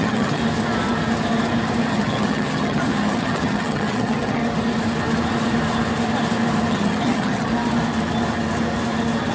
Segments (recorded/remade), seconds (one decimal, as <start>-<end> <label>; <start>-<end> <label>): 0.0-0.4 remade; 0.4-1.9 recorded; 1.9-4.4 remade; 4.4-6.7 recorded; 6.7-7.5 remade; 7.5-9.3 recorded